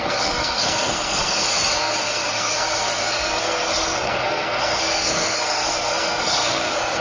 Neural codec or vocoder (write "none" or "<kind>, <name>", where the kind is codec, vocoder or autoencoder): codec, SNAC